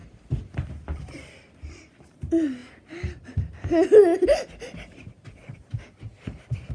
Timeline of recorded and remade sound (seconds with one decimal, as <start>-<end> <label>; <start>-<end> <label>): 0.0-6.7 recorded